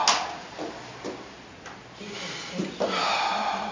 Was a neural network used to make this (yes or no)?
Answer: no